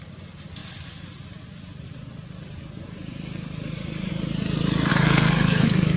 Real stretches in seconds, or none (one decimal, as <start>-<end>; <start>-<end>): 0.0-4.9